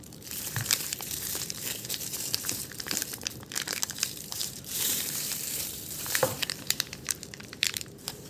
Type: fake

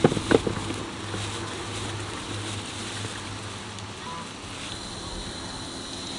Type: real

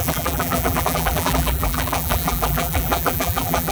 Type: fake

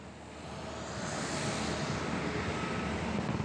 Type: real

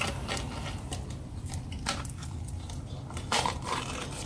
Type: fake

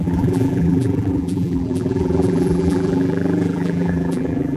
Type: fake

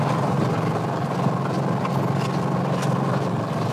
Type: real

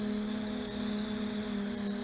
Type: real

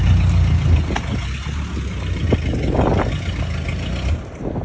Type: real